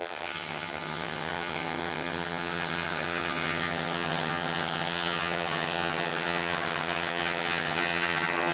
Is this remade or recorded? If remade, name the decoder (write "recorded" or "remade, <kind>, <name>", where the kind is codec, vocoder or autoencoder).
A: remade, vocoder, HiFi-GAN